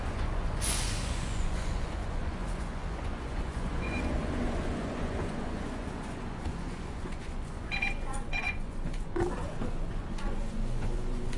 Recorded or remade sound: remade